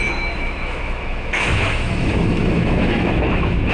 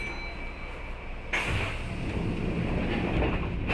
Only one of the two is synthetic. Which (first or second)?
first